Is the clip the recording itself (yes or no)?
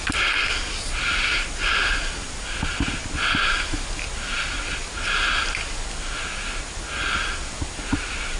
yes